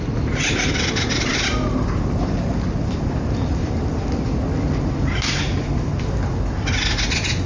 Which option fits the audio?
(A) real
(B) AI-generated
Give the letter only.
A